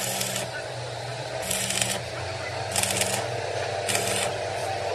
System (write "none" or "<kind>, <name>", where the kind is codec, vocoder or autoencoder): none